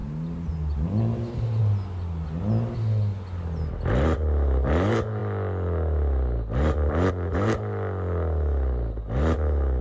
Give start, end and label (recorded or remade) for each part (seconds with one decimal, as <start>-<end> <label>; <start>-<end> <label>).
0.0-9.8 recorded